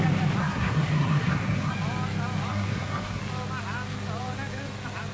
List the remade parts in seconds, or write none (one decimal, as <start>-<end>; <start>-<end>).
0.4-1.7; 2.5-3.2